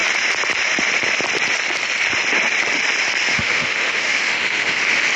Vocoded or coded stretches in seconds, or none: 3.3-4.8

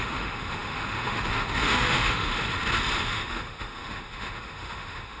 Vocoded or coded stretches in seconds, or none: 0.0-2.3; 3.0-5.2